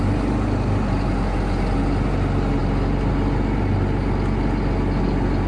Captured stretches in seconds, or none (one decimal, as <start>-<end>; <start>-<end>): 0.0-5.5